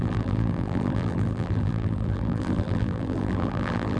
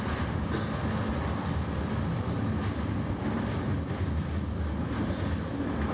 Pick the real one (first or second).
second